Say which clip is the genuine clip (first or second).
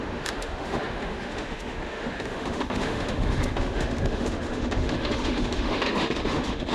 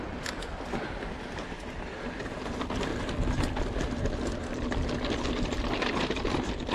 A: second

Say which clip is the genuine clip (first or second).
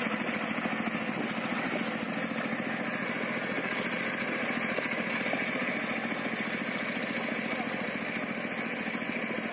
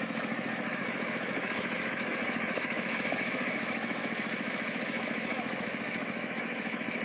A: first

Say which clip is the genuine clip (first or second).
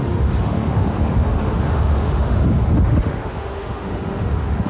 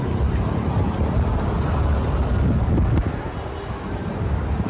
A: second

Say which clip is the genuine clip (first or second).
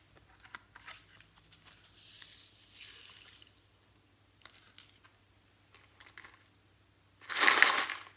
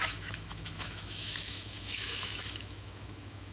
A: first